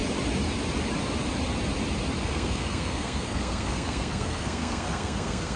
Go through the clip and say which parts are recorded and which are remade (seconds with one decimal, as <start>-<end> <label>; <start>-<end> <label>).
0.0-2.2 recorded; 2.2-5.6 remade